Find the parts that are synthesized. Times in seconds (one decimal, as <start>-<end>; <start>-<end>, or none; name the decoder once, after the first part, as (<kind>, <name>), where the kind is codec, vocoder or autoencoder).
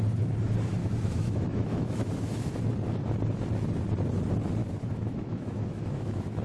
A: 0.8-2.5 (autoencoder, DAC-VAE); 4.6-6.4